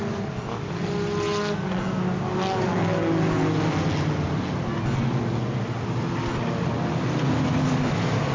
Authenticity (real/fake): real